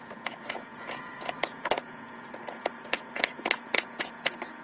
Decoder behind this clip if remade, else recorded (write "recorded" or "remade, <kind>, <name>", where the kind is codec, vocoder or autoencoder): remade, vocoder, Vocos